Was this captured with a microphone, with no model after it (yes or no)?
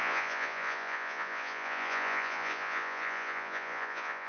no